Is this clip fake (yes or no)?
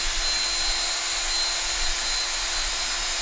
no